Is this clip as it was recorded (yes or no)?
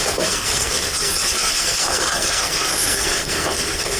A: no